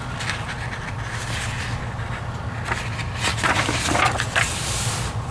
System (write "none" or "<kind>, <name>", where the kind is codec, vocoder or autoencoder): none